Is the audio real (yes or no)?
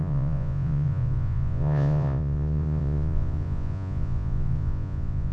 no